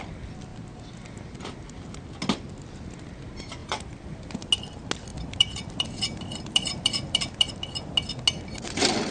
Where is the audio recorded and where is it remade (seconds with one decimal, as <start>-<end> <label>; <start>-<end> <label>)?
0.0-3.6 recorded; 3.6-4.2 remade; 4.2-5.1 recorded; 5.1-7.5 remade; 7.5-9.1 recorded